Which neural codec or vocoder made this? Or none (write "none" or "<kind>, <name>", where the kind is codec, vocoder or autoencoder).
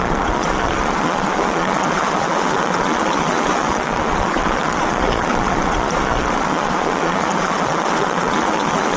vocoder, Vocos